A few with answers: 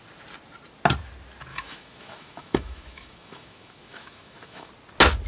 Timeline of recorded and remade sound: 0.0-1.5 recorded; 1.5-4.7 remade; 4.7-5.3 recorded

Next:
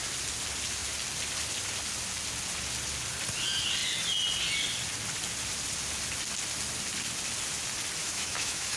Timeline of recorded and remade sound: 0.0-8.0 recorded; 8.0-8.8 remade

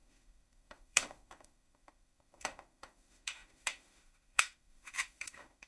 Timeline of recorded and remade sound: 0.0-5.7 remade

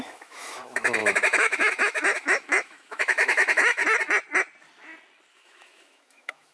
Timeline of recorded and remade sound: 0.0-3.8 remade; 3.8-5.3 recorded; 5.3-6.5 remade

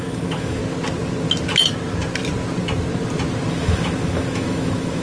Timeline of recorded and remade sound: 0.0-0.6 remade; 0.6-3.5 recorded; 3.5-5.0 remade

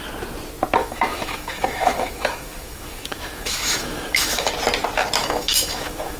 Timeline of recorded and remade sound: 0.0-0.8 recorded; 0.8-4.5 remade; 4.5-5.2 recorded; 5.2-6.2 remade

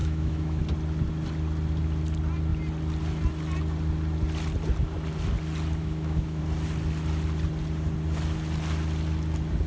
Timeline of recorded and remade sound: 0.0-0.6 remade; 0.6-5.8 recorded; 5.8-6.4 remade; 6.4-9.7 recorded

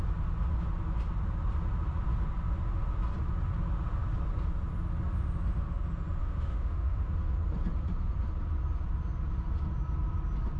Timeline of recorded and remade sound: 0.0-6.2 recorded; 6.2-7.1 remade; 7.1-10.6 recorded